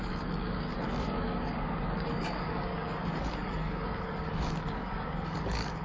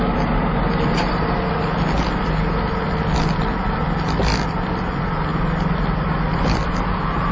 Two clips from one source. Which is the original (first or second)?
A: second